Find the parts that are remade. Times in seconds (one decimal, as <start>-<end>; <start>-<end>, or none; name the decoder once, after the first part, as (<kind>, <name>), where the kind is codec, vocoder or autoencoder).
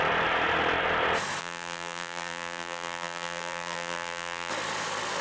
1.4-4.5 (vocoder, BigVGAN v2)